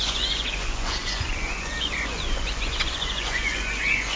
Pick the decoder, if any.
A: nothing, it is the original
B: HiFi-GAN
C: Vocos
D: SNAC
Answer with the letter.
C